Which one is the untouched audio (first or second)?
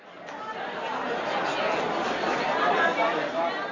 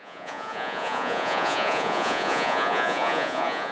first